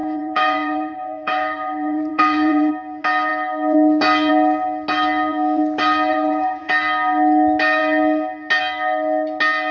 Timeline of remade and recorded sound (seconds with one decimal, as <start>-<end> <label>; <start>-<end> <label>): 0.0-2.7 remade; 2.7-6.1 recorded; 6.1-6.7 remade; 6.7-9.7 recorded